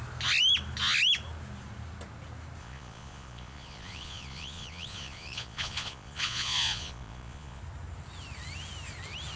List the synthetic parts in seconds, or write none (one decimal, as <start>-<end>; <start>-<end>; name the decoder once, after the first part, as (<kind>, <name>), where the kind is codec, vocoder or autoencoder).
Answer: 2.6-7.6 (vocoder, Vocos)